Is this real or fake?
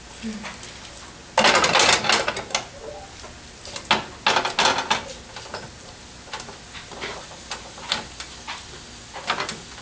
real